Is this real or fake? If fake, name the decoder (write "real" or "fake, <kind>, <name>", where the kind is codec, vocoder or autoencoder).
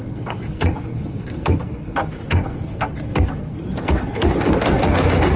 fake, codec, SNAC